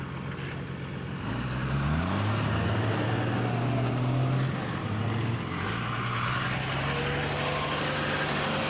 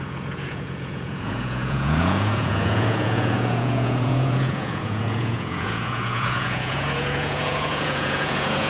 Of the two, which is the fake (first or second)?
second